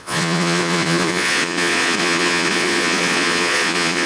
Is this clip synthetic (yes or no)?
yes